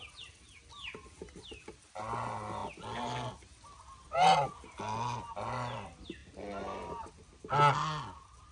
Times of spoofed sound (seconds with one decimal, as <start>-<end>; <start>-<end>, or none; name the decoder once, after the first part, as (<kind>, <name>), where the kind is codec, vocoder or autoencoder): none